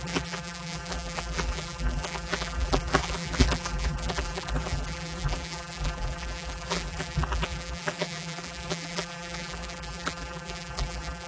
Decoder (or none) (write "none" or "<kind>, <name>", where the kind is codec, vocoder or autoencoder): vocoder, BigVGAN v2